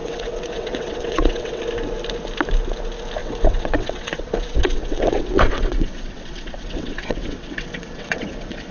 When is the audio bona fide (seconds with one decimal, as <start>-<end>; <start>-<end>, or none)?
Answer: 1.6-3.2